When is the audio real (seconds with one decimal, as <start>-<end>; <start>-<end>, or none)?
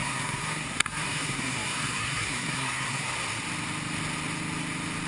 3.1-5.1